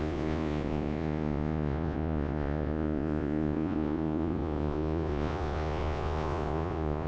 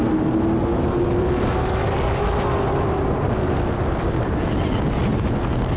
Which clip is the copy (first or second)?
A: first